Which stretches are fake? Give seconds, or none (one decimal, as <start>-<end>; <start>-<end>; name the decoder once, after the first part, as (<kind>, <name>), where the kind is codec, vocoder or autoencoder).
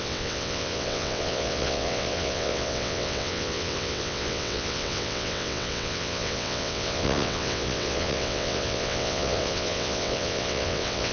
0.0-11.1 (vocoder, WaveNeXt)